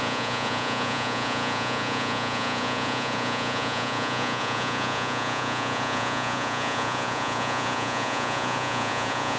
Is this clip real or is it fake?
fake